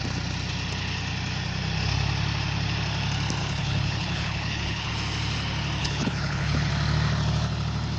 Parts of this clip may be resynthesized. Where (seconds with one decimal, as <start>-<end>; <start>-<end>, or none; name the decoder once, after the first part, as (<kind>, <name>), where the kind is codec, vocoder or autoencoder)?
3.4-4.9 (codec, HILCodec); 5.8-6.7

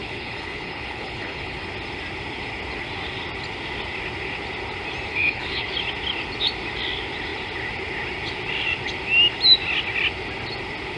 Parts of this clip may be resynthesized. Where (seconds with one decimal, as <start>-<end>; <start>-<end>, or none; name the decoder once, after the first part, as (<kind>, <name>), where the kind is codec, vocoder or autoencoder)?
0.0-1.7 (codec, HILCodec); 5.1-5.7

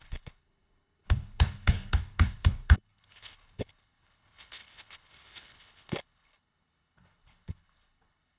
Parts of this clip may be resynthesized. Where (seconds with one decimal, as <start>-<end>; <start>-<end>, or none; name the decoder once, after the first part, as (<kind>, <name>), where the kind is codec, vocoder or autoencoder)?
0.0-8.4 (codec, HILCodec)

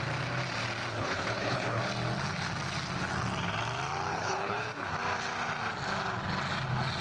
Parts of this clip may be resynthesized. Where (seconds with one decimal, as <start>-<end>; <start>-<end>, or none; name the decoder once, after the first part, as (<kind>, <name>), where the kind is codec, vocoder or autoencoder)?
0.9-1.8 (codec, HILCodec); 4.1-4.9

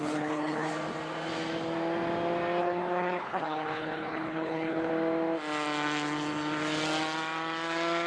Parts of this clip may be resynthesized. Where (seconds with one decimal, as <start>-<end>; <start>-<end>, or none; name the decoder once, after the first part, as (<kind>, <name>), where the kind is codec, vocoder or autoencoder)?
0.0-0.7 (codec, HILCodec); 2.6-4.9

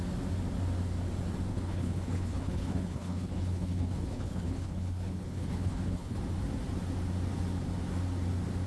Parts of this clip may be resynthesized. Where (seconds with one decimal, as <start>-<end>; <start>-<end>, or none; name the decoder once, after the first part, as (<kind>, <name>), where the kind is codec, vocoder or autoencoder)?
1.5-6.2 (codec, HILCodec)

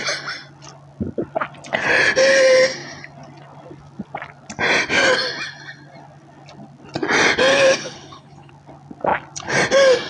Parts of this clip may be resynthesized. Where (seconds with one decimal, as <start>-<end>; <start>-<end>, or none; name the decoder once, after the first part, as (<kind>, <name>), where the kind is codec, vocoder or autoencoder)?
7.5-8.5 (codec, HILCodec)

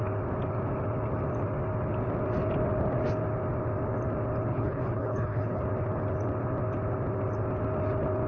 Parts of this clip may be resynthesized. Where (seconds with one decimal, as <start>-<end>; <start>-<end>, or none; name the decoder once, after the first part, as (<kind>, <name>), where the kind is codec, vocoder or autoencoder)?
4.5-5.6 (codec, HILCodec)